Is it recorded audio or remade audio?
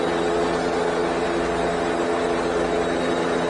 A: recorded